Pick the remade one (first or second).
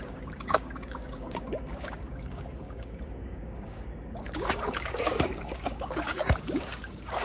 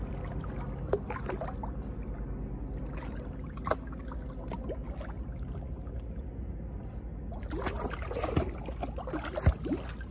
first